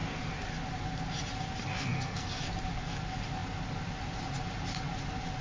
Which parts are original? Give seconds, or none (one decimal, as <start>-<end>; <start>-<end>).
0.0-1.7; 2.5-5.4